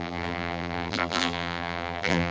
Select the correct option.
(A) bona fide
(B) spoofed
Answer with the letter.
B